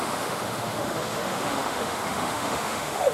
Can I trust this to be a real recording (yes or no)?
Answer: no